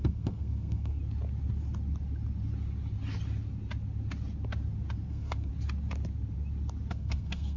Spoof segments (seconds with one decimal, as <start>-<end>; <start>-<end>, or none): 0.0-1.0; 5.1-5.5; 6.9-7.6